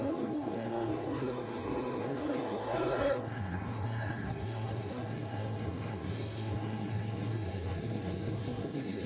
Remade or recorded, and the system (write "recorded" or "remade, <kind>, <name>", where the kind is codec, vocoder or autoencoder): remade, codec, SNAC